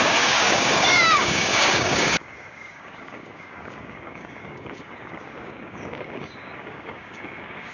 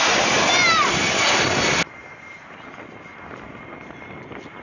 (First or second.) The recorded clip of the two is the second